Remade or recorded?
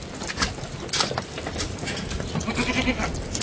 recorded